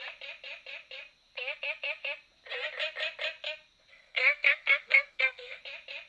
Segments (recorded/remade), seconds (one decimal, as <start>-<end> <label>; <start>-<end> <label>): 0.0-3.9 recorded; 3.9-5.6 remade; 5.6-6.1 recorded